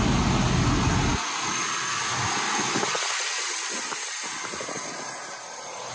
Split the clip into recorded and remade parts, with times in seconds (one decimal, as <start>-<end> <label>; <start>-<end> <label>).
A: 0.0-5.9 recorded